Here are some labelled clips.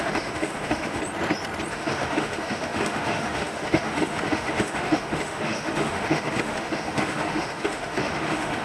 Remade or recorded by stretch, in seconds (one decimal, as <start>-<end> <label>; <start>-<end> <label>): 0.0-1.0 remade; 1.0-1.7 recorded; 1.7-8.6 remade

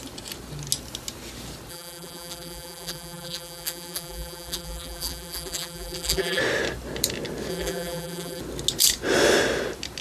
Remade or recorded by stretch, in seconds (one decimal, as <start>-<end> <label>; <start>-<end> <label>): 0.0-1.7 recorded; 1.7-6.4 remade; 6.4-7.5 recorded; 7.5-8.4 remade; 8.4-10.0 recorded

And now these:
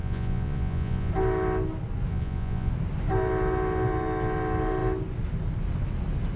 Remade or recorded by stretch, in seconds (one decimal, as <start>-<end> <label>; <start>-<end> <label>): 0.0-1.1 remade; 1.1-2.1 recorded; 2.1-2.7 remade; 2.7-6.4 recorded

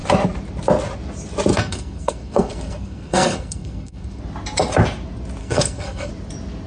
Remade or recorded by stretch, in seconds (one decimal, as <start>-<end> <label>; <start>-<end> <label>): 0.0-1.5 recorded; 1.5-4.2 remade; 4.2-5.4 recorded; 5.4-6.1 remade; 6.1-6.7 recorded

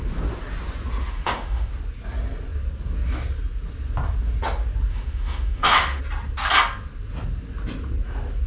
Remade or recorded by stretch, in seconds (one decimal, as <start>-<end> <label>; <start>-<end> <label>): 0.0-1.0 recorded; 1.0-1.7 remade; 1.7-4.9 recorded; 4.9-6.0 remade; 6.0-8.5 recorded

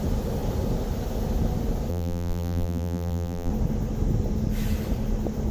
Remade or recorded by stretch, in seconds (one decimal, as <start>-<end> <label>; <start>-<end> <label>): 0.0-1.9 recorded; 1.9-3.5 remade; 3.5-5.5 recorded

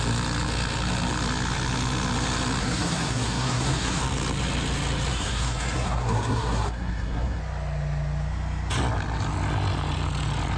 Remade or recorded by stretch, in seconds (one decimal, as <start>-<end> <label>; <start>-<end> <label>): 0.0-2.6 recorded; 2.6-4.0 remade; 4.0-5.1 recorded; 5.1-7.4 remade; 7.4-10.6 recorded